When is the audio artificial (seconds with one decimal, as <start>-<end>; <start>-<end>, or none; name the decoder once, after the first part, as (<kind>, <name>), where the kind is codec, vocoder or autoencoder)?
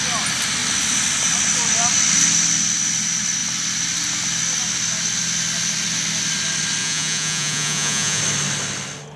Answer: 6.8-8.2 (vocoder, Vocos)